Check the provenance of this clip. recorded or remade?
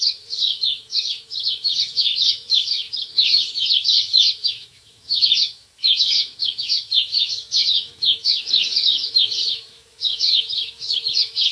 remade